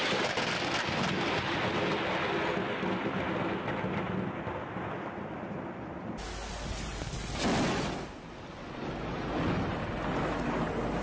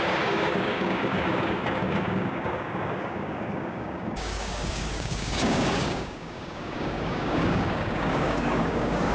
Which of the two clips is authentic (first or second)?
first